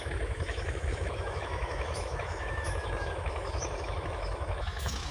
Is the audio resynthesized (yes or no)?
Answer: yes